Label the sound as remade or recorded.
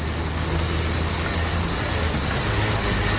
recorded